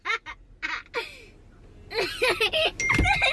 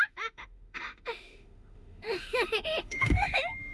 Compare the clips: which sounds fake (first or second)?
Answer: second